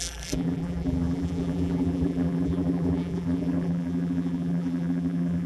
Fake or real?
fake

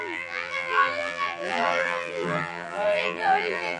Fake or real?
fake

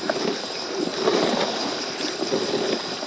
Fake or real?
fake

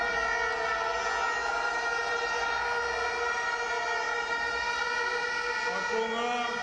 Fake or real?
real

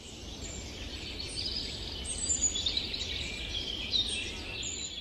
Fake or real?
fake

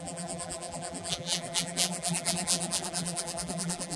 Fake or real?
fake